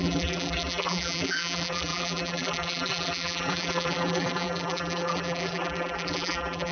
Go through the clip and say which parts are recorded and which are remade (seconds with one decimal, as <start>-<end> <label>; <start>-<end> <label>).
0.0-6.7 remade